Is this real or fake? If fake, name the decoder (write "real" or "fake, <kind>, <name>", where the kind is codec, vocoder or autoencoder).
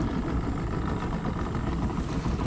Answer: real